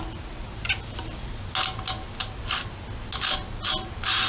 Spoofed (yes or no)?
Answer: no